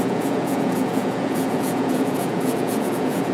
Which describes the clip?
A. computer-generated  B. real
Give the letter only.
A